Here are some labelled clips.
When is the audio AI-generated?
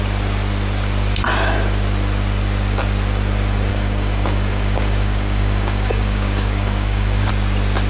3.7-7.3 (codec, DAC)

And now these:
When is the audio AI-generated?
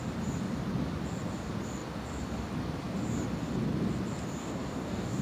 4.4-5.2 (codec, DAC)